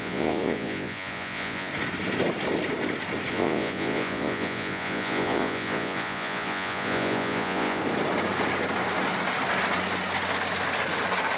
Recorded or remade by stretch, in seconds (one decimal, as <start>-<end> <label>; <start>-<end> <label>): 0.0-1.7 remade; 1.7-3.3 recorded; 3.3-7.8 remade; 7.8-11.4 recorded